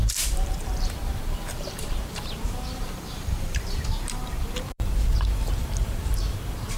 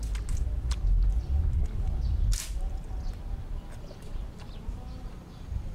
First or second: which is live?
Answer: second